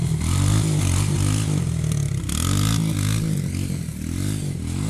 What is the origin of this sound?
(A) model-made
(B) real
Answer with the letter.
B